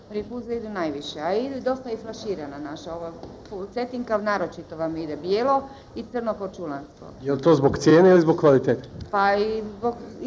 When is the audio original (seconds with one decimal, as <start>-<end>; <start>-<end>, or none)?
0.0-10.3